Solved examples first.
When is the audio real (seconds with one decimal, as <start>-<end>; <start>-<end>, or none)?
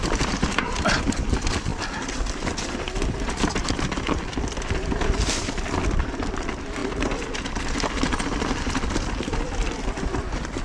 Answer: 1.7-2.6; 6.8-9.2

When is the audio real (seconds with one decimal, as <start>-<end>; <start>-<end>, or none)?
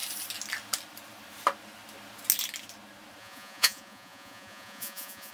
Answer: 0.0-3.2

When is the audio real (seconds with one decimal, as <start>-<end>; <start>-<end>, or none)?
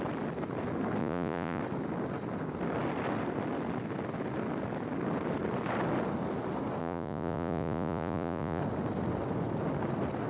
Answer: 0.0-1.0; 1.6-6.8; 8.6-10.3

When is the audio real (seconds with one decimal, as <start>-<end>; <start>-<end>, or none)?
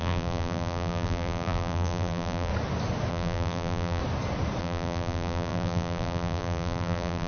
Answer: 2.5-3.1; 4.0-4.6